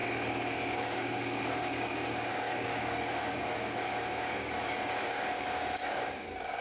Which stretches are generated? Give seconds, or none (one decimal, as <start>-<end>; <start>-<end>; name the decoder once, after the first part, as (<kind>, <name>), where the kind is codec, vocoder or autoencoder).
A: 0.0-6.6 (codec, DAC)